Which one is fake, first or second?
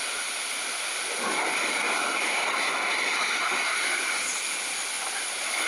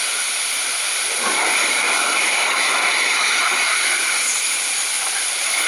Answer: second